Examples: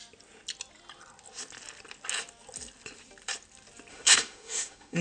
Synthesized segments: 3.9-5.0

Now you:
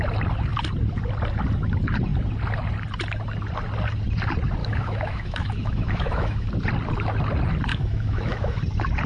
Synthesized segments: 4.6-6.5; 7.7-8.6

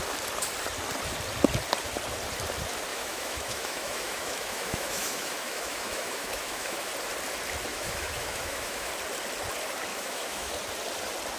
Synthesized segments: 2.9-6.9; 7.7-8.9; 9.9-10.5

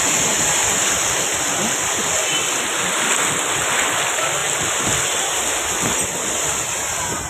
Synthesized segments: none